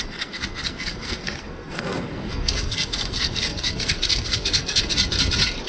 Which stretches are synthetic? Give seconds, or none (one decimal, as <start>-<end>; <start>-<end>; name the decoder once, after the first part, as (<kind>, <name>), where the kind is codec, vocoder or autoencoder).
0.0-4.9 (codec, SNAC)